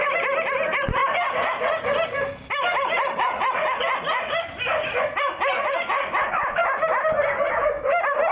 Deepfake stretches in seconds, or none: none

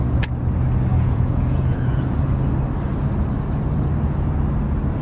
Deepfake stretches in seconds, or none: 0.9-2.2 (vocoder, Vocos)

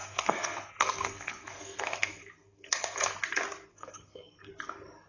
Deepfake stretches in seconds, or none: 0.0-3.1 (codec, SNAC); 3.7-4.5

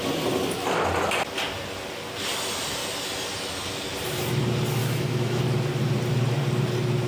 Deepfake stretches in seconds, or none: 4.8-5.4 (autoencoder, DAC-VAE)

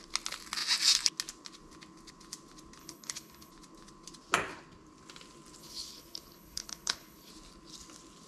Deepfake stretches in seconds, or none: 2.8-3.5 (codec, HILCodec); 5.6-7.3